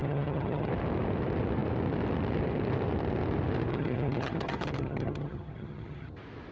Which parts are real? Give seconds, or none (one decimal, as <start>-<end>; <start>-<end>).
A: 0.7-3.7; 6.1-6.5